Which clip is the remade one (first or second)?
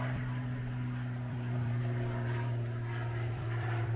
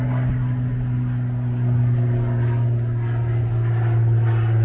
first